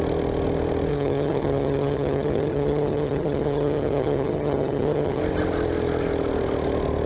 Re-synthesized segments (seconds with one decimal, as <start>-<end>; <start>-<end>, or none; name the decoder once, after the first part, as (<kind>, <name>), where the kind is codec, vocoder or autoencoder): 0.9-5.2 (vocoder, HiFi-GAN)